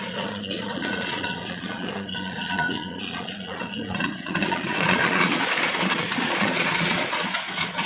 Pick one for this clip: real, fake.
fake